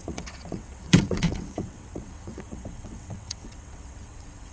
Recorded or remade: remade